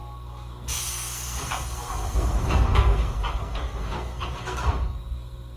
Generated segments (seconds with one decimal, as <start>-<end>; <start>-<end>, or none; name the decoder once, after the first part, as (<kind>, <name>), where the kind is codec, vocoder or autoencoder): 0.0-5.6 (codec, SNAC)